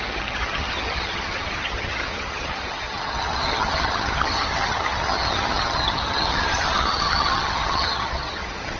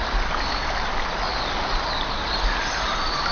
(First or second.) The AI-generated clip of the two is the first